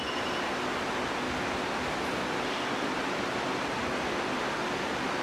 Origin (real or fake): real